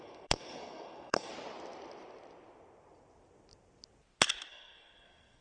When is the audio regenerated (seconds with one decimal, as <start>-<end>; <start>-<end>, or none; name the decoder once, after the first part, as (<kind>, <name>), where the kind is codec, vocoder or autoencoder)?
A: 0.0-1.3 (codec, SNAC); 4.5-5.4